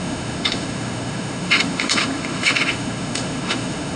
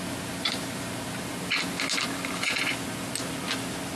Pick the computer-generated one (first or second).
first